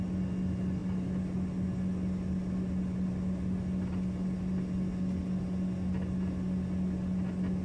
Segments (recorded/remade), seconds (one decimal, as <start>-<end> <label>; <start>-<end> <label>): 0.0-7.6 recorded